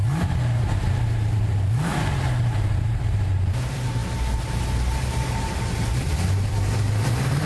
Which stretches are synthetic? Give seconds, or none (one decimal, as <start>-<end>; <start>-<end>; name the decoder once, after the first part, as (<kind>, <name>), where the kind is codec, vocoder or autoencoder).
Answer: 0.6-7.5 (vocoder, BigVGAN v2)